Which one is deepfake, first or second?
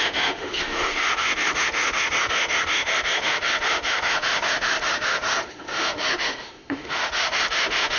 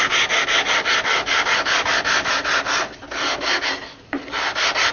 first